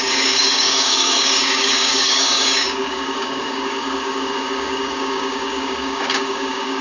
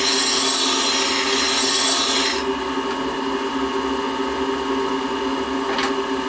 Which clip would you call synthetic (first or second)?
first